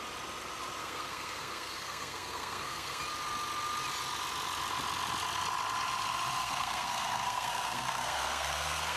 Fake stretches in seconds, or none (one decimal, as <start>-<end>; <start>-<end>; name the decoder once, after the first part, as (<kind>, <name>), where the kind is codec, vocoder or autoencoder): 0.8-3.0 (codec, SNAC); 6.4-9.0

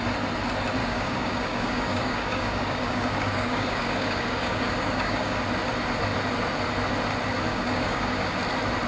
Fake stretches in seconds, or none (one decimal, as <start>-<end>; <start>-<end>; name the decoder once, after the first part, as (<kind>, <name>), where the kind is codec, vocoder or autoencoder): 0.8-5.4 (codec, DAC); 7.5-8.3

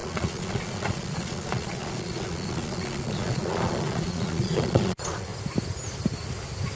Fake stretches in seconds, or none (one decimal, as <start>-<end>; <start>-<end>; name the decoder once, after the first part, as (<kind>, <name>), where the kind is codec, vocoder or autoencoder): 0.0-5.3 (vocoder, Vocos)

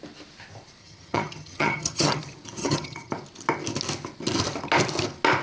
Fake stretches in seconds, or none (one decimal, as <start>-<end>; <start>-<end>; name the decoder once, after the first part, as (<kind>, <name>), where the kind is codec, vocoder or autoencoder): 0.8-2.2 (vocoder, HiFi-GAN); 2.6-3.1

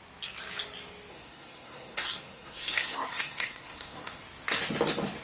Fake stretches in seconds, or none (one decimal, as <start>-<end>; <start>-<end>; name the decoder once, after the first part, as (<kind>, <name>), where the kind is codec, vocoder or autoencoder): 1.1-4.2 (codec, SNAC)